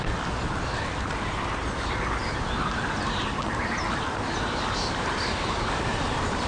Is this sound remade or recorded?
recorded